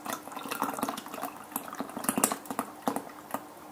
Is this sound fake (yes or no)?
no